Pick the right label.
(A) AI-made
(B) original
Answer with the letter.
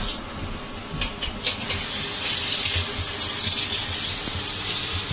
B